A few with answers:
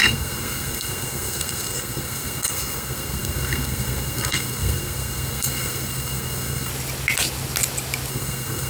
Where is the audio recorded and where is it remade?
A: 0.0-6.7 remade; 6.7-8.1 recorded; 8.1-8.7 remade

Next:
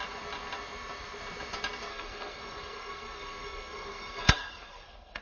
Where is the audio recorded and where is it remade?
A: 0.0-1.9 recorded; 1.9-5.2 remade

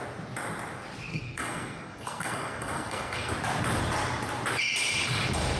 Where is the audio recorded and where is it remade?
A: 0.0-1.1 recorded; 1.1-3.3 remade; 3.3-5.6 recorded